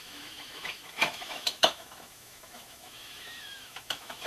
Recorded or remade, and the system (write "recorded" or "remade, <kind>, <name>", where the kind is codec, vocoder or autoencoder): remade, autoencoder, DAC-VAE